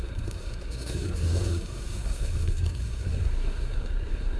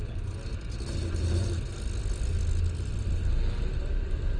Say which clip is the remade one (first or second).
first